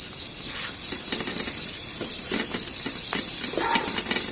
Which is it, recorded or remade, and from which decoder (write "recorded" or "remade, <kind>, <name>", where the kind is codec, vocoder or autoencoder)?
recorded